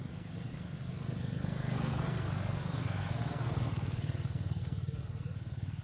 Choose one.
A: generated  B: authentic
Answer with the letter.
A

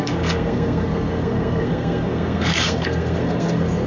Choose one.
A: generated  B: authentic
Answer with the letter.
A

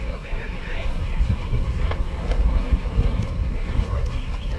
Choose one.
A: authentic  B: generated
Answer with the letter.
B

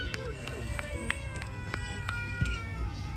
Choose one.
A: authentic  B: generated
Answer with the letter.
B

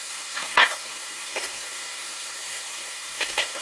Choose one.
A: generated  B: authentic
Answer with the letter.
A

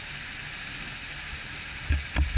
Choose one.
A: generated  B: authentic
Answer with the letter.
B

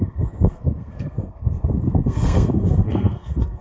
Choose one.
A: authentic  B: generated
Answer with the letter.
B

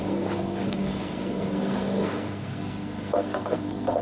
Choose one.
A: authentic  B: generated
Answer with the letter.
B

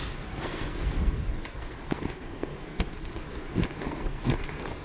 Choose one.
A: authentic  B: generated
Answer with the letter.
B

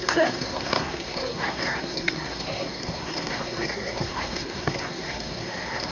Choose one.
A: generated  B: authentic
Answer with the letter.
A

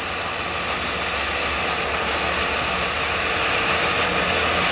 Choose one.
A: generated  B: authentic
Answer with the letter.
B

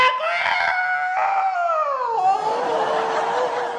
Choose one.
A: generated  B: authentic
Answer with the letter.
B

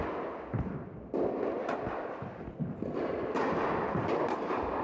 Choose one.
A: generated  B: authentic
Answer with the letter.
B